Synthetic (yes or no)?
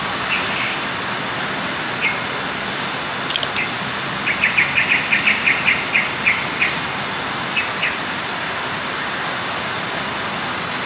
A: no